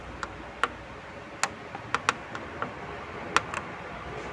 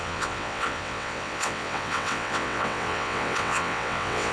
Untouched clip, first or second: first